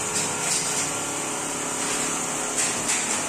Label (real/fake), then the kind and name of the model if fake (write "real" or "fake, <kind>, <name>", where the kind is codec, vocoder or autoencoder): real